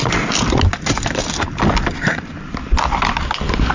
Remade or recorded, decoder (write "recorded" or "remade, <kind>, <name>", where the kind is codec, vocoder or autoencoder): recorded